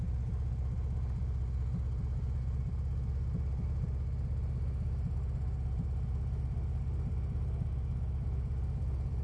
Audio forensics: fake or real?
real